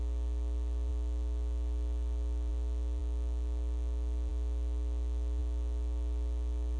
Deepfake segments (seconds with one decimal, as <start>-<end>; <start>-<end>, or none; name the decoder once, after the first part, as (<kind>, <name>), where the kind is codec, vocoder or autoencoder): none